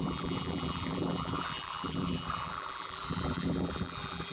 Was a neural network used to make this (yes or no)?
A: yes